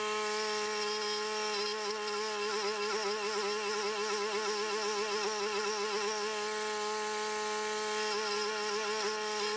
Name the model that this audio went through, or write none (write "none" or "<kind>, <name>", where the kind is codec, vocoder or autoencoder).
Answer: none